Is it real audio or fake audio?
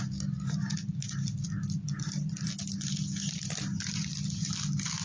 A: real